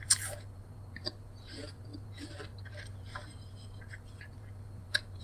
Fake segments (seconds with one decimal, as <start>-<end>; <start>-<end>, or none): 0.0-5.2